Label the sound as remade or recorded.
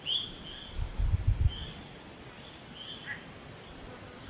recorded